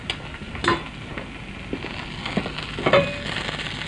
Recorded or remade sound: recorded